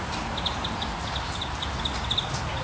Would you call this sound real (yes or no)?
yes